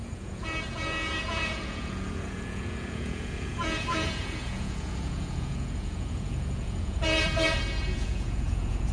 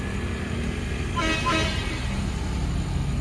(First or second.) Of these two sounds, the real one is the second